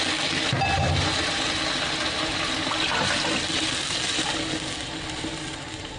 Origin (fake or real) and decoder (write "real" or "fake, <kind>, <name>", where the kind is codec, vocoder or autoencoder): real